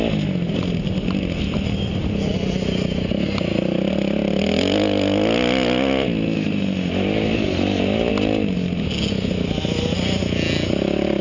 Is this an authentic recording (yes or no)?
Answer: yes